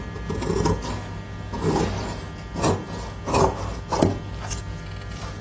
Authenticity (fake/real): real